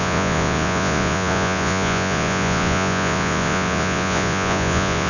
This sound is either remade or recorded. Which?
remade